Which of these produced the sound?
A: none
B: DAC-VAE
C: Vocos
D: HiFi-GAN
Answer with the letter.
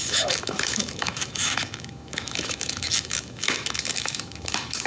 B